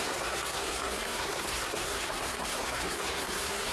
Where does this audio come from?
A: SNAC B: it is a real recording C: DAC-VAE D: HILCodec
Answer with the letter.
A